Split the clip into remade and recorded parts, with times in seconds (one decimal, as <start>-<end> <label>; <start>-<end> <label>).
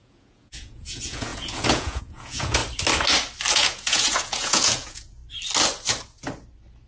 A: 0.0-2.6 remade; 2.6-3.5 recorded; 3.5-5.2 remade; 5.2-6.9 recorded